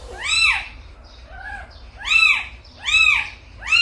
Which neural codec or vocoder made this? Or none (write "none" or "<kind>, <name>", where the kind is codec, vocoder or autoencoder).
vocoder, BigVGAN v2